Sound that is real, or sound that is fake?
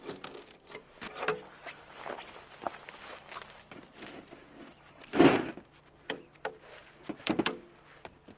real